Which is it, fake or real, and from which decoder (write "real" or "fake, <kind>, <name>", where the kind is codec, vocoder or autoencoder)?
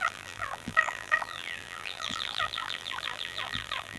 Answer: fake, vocoder, BigVGAN v2